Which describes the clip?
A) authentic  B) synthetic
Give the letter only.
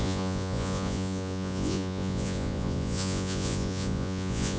B